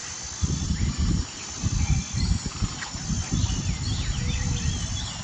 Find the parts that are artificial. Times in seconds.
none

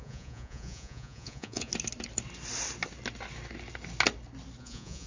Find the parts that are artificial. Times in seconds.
0.0-1.7 (vocoder, Vocos); 4.6-5.1

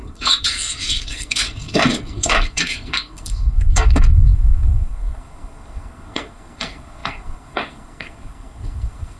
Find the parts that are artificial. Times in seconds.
0.0-9.2 (codec, SNAC)